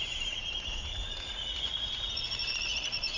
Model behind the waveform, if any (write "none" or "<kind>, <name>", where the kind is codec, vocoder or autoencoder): vocoder, Vocos